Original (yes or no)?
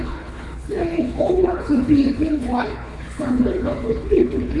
no